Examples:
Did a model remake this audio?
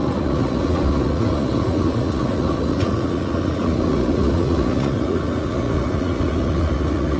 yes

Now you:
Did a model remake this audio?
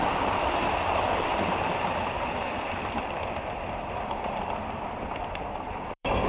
yes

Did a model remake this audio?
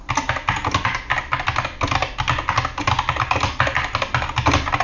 no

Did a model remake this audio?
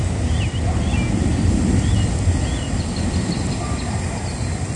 no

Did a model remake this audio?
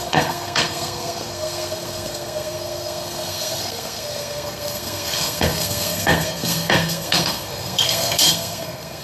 yes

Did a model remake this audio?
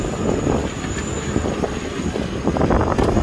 no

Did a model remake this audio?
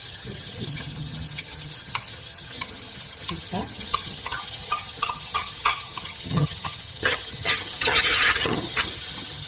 yes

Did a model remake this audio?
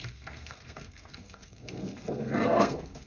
yes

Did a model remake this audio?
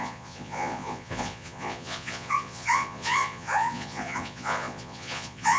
yes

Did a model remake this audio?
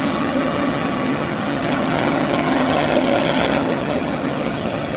yes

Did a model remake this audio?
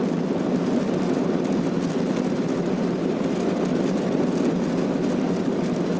no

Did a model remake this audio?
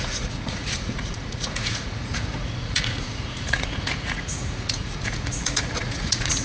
yes